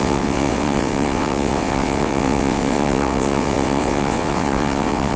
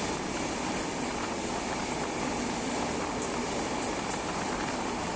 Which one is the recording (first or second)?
second